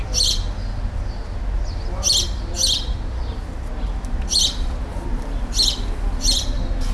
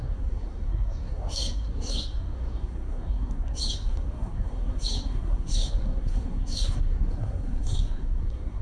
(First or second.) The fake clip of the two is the second